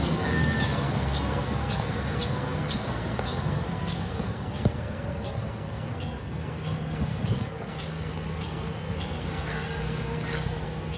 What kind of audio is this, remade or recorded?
remade